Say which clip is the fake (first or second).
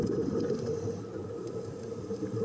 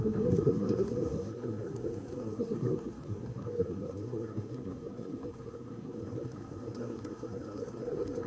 second